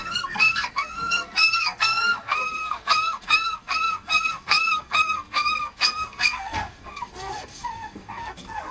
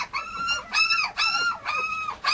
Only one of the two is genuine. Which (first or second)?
second